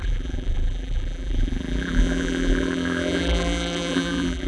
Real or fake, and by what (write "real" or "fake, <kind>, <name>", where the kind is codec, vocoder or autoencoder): fake, vocoder, BigVGAN v2